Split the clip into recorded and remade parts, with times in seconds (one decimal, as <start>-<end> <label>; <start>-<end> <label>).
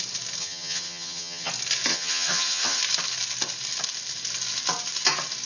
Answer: 0.0-0.4 recorded; 0.4-1.5 remade; 1.5-1.9 recorded; 1.9-2.8 remade; 2.8-5.5 recorded